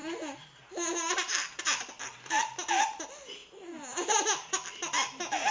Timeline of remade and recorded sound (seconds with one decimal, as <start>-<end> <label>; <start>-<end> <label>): 0.0-5.5 recorded